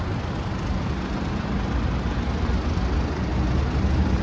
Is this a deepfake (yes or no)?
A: no